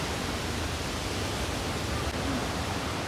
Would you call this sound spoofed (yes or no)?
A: no